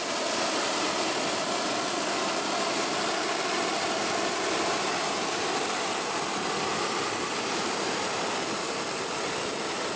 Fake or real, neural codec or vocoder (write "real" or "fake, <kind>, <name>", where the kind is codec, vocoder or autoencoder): fake, vocoder, BigVGAN v2